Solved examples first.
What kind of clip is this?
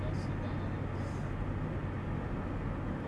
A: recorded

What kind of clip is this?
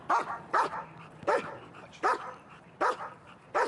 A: remade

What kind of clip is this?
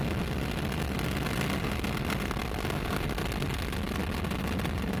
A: recorded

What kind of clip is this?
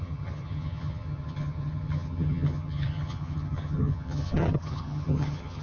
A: remade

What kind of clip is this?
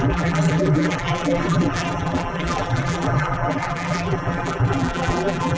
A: remade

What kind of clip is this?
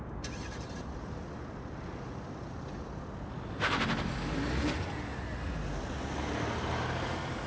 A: recorded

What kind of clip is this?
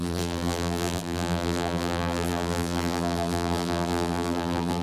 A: remade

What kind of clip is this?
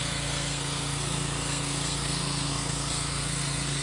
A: remade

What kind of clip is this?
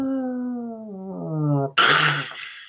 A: recorded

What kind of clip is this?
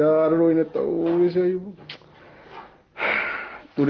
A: recorded